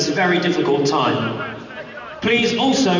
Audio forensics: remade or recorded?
recorded